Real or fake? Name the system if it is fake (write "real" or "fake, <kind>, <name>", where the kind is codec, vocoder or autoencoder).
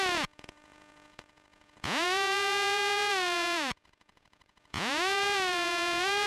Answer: fake, vocoder, Vocos